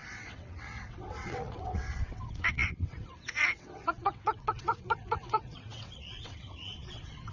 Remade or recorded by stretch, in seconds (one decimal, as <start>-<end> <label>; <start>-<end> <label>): 0.0-7.3 remade